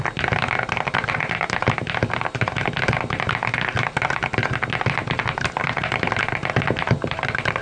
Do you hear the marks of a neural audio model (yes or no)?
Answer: no